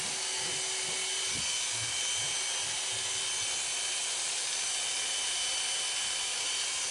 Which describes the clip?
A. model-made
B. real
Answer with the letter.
B